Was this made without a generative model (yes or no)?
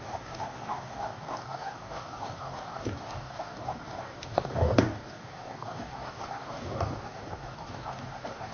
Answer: no